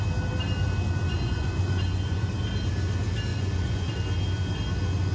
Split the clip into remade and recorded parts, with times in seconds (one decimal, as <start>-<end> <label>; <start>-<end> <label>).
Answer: 0.0-1.1 recorded; 1.1-2.3 remade; 2.3-3.3 recorded; 3.3-3.9 remade; 3.9-5.1 recorded